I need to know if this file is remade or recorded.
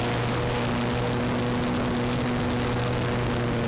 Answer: recorded